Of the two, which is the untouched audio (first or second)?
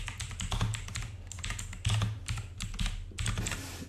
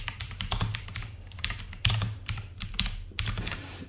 first